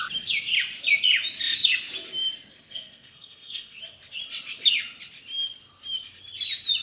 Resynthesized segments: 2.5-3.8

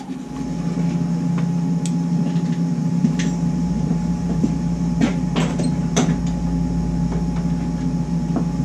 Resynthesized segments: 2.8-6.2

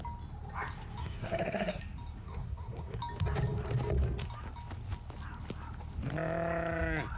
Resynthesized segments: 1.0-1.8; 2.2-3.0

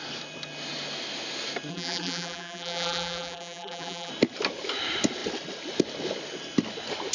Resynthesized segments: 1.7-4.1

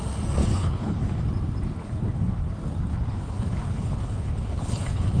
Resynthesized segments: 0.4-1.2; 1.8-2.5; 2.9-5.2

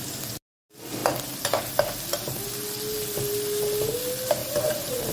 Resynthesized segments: 4.4-5.1

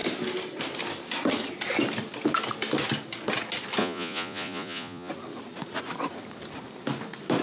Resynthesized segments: 3.8-5.1

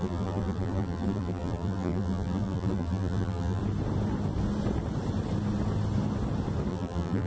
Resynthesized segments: 0.0-3.6; 6.7-7.3